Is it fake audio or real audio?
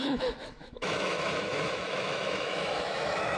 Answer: fake